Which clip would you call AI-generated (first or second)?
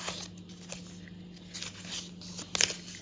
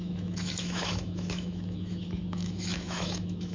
second